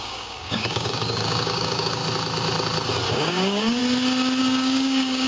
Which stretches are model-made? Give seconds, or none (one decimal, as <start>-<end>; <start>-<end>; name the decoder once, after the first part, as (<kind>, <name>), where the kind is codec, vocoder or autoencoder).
0.0-2.0 (codec, DAC); 3.1-3.8; 4.4-5.3